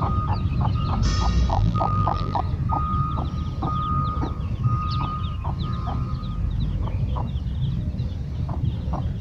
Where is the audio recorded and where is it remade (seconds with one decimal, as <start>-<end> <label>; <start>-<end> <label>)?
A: 0.0-1.5 recorded; 1.5-2.4 remade; 2.4-9.2 recorded